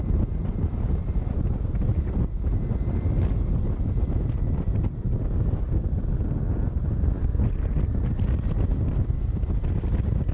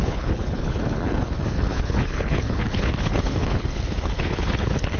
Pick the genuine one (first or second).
first